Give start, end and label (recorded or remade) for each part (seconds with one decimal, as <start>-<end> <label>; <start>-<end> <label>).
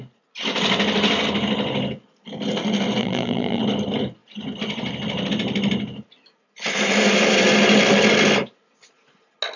0.0-3.0 recorded; 3.0-3.6 remade; 3.6-9.6 recorded